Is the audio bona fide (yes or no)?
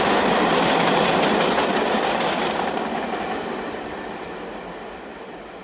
yes